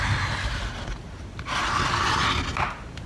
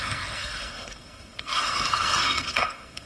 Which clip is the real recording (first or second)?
first